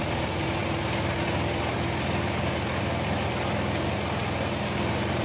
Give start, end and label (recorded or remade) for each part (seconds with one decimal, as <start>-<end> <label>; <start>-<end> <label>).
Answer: 0.0-5.2 recorded